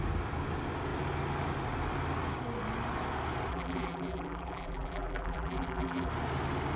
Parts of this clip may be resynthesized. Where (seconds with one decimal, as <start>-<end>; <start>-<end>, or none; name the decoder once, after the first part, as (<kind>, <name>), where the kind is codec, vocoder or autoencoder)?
3.5-6.1 (vocoder, BigVGAN v2)